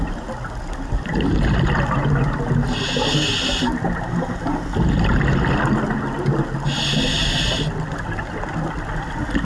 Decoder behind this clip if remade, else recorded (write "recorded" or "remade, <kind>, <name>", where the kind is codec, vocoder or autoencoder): recorded